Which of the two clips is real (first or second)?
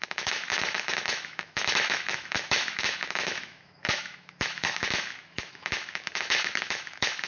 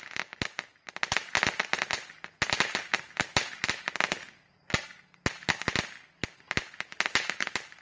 second